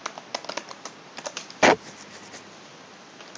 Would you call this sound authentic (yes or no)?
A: yes